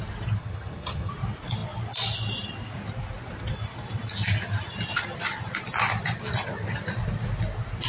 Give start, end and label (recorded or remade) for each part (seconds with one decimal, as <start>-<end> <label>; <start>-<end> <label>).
0.0-0.4 recorded; 0.4-1.1 remade; 1.1-7.9 recorded